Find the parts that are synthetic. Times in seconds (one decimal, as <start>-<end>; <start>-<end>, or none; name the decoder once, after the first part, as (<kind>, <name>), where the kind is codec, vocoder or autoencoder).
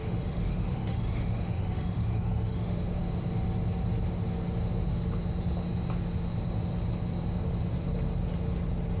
0.0-3.0 (autoencoder, DAC-VAE)